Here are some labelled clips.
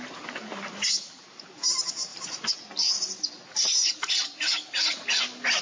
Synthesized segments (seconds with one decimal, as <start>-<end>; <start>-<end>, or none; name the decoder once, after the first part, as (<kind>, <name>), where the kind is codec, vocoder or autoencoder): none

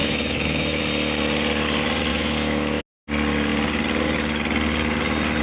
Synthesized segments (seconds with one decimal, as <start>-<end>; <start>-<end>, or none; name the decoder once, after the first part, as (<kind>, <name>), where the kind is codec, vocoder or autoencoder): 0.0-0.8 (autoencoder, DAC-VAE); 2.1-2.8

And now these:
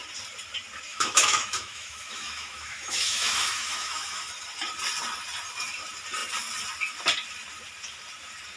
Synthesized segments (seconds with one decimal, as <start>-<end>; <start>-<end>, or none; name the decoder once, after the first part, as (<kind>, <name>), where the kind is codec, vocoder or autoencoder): 0.9-4.3 (autoencoder, DAC-VAE)

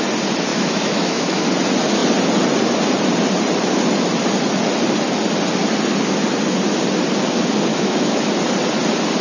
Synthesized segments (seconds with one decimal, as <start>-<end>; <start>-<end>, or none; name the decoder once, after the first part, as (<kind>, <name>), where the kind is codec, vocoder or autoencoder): 0.5-1.5 (autoencoder, DAC-VAE); 7.7-8.3

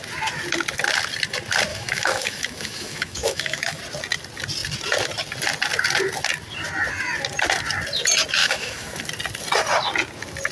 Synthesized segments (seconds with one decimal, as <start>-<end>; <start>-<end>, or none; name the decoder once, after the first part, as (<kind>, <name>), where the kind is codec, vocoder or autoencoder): 1.7-3.8 (autoencoder, DAC-VAE); 8.4-9.0

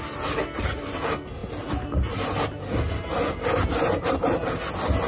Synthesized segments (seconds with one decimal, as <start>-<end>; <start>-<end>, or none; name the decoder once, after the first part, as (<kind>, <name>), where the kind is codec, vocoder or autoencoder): none